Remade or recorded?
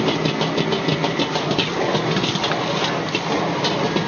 recorded